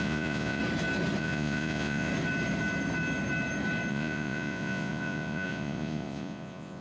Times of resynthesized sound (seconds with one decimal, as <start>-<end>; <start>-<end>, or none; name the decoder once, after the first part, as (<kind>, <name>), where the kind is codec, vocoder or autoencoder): 0.0-0.6 (vocoder, Vocos); 1.2-2.1; 3.9-6.8